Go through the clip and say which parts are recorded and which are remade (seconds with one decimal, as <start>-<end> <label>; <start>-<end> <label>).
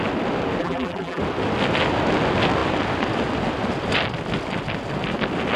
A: 0.0-0.6 recorded; 0.6-1.2 remade; 1.2-5.6 recorded